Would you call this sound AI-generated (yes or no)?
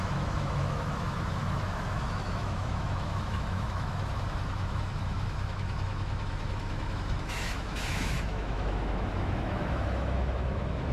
yes